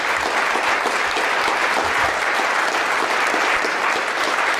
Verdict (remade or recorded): remade